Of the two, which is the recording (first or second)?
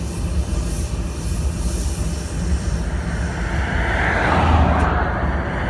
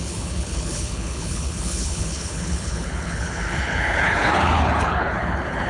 first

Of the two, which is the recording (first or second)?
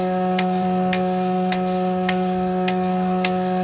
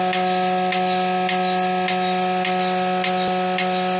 second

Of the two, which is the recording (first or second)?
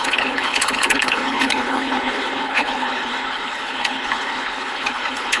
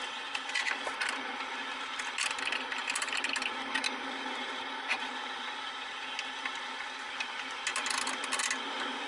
second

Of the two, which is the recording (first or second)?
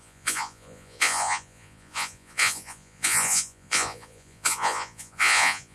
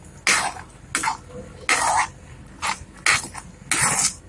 second